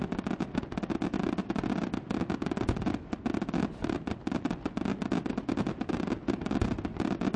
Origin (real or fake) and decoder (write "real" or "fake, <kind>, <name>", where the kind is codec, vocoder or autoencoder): real